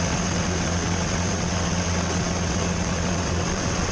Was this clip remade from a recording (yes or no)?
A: yes